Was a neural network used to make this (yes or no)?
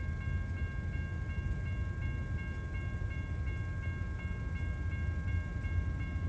no